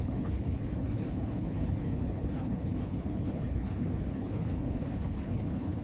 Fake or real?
fake